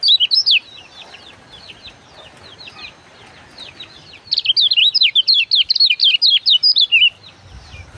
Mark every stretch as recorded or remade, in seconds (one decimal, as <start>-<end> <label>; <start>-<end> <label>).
0.0-8.0 recorded